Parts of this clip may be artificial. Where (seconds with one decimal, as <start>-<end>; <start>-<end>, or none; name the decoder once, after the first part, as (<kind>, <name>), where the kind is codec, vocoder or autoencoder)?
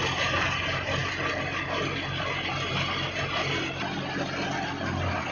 none